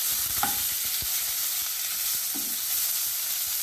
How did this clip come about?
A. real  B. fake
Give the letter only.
A